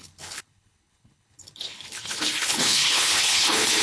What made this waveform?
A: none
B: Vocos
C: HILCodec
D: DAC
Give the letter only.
C